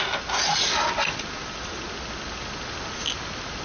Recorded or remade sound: recorded